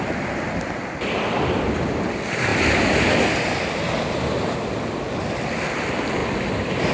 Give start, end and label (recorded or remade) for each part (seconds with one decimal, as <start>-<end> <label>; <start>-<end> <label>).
0.0-6.9 recorded